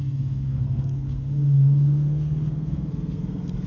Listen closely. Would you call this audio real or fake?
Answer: fake